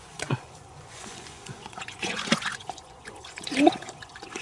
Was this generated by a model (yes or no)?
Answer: yes